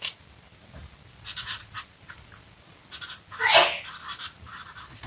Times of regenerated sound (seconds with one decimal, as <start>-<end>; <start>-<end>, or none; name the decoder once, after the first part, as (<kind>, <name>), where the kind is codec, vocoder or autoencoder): none